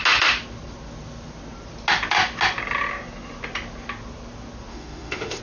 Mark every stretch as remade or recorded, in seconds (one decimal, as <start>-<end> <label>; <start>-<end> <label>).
0.0-4.7 recorded; 4.7-5.4 remade